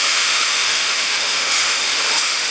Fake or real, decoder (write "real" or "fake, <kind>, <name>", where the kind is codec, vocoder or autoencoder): fake, autoencoder, DAC-VAE